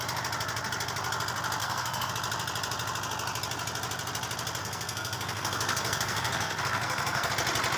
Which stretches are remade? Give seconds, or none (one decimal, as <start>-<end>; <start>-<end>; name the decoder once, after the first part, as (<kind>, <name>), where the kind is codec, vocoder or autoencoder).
1.6-2.1 (codec, SNAC); 4.6-7.3